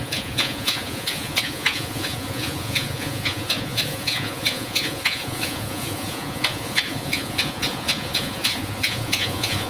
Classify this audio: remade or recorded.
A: remade